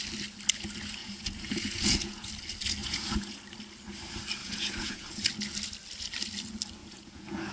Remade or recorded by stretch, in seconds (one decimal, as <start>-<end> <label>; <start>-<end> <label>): 0.0-1.0 recorded; 1.0-2.3 remade; 2.3-2.8 recorded; 2.8-3.4 remade; 3.4-4.4 recorded; 4.4-5.3 remade; 5.3-6.8 recorded; 6.8-7.5 remade